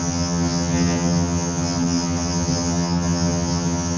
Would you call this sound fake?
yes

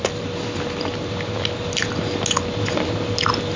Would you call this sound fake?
no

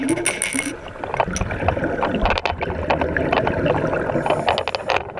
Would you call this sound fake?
no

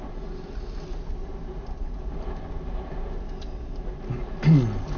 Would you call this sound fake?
no